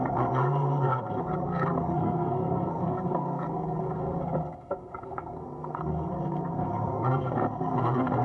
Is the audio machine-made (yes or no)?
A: yes